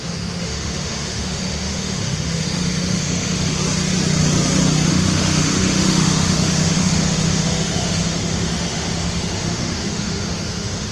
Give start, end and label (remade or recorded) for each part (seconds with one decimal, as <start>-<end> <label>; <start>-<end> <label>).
0.0-3.6 remade; 3.6-4.9 recorded; 4.9-10.9 remade